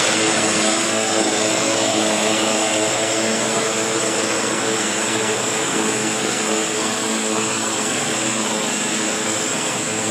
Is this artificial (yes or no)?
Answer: yes